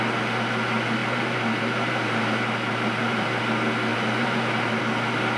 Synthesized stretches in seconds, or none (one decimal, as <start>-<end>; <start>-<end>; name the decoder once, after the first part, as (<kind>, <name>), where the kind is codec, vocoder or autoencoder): 1.0-3.4 (vocoder, BigVGAN v2); 3.9-4.8